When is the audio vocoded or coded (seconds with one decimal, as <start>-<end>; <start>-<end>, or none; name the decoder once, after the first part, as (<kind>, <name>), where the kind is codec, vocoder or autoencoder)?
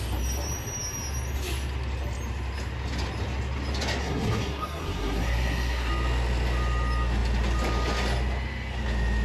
4.0-5.9 (codec, SNAC)